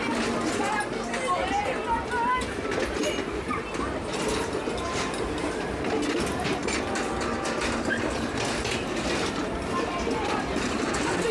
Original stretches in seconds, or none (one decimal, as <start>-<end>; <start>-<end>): 0.0-11.3